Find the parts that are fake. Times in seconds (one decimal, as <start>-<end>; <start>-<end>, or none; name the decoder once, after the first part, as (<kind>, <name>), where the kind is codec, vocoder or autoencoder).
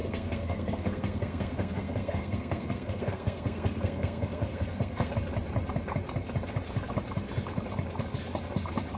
0.0-5.1 (codec, SNAC)